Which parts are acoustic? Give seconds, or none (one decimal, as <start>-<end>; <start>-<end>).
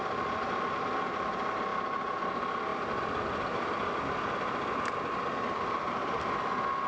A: 0.0-6.9